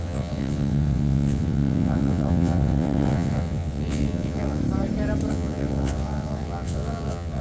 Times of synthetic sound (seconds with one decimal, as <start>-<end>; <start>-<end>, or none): 0.0-4.6; 5.3-7.4